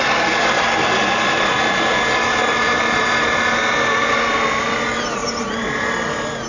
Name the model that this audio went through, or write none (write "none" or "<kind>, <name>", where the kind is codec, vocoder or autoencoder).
none